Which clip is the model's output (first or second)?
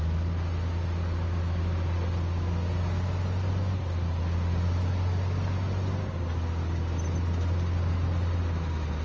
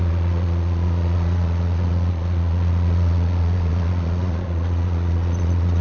second